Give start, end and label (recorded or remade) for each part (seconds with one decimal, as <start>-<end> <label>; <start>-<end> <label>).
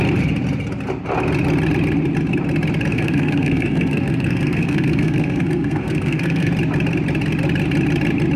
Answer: 0.0-2.9 recorded; 2.9-6.5 remade; 6.5-8.4 recorded